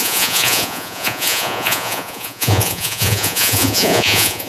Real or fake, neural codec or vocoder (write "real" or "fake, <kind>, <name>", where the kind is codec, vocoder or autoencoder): fake, vocoder, Vocos